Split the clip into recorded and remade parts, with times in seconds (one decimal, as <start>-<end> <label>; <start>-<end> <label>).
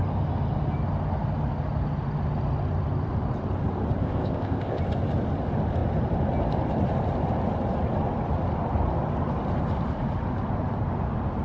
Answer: 0.0-4.0 recorded; 4.0-4.8 remade; 4.8-11.4 recorded